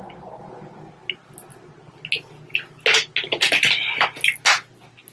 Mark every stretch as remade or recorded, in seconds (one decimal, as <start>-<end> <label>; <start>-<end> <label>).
0.0-5.1 recorded